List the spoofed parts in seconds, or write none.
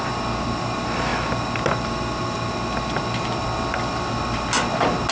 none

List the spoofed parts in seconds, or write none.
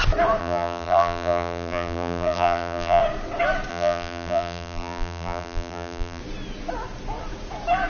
0.4-3.0 (vocoder, BigVGAN v2); 3.7-6.2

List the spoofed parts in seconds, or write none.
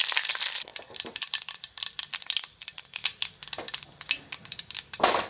0.0-0.7 (vocoder, BigVGAN v2); 2.0-3.0; 4.7-5.3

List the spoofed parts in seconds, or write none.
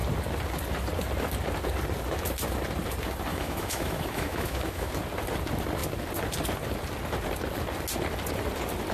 3.3-4.9 (autoencoder, DAC-VAE)